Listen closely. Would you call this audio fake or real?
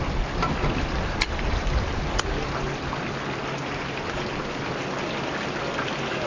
real